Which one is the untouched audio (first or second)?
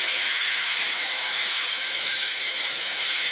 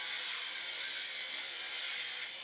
second